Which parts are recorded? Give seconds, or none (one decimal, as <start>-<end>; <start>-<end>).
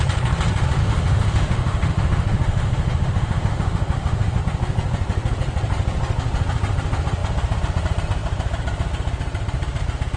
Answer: 0.0-0.8; 4.4-10.2